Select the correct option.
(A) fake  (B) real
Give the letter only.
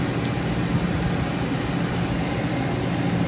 B